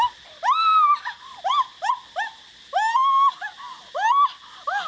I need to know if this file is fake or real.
real